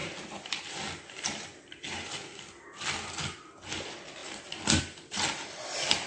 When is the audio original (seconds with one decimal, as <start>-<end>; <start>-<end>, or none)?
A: 0.6-6.1